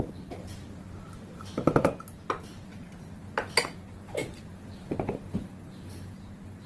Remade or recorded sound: recorded